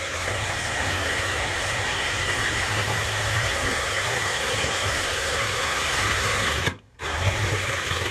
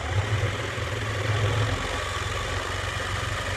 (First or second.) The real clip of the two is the second